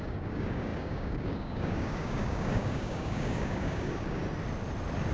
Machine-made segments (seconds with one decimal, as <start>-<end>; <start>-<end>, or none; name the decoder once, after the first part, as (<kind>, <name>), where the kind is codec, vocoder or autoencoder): 0.0-4.2 (codec, DAC)